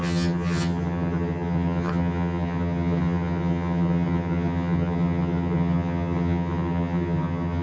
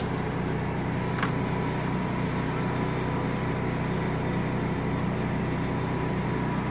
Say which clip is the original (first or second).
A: second